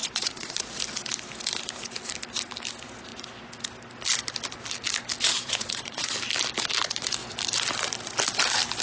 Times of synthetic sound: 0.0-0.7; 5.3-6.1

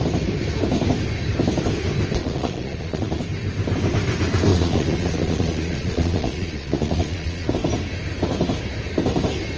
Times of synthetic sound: 2.2-3.2; 4.5-7.5